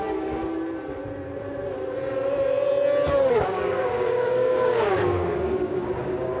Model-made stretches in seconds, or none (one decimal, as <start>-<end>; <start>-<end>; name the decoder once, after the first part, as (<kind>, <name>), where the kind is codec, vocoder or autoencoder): 0.0-0.5 (codec, DAC); 3.3-6.4